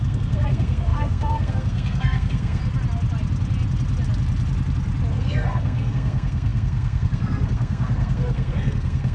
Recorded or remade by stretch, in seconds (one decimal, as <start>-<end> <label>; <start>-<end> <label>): 0.0-2.6 remade; 2.6-5.1 recorded; 5.1-9.1 remade